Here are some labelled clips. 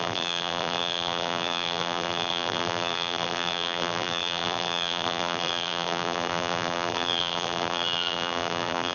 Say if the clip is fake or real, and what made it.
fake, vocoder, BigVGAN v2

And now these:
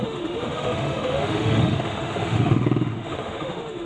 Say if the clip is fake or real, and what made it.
fake, autoencoder, DAC-VAE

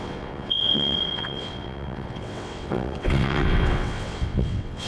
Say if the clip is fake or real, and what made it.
fake, vocoder, WaveNeXt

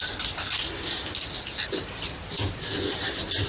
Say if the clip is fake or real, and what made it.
real